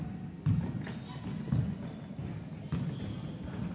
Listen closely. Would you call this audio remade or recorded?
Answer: recorded